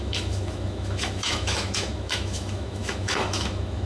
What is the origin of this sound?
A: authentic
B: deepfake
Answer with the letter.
B